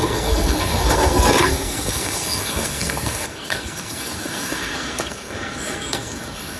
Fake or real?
fake